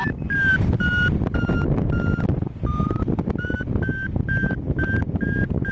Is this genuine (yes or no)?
yes